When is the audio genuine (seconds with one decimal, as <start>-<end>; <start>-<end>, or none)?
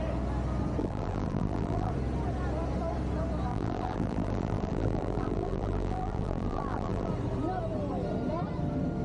0.0-0.8; 1.9-3.5; 7.1-9.0